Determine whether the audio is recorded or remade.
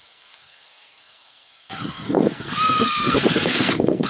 remade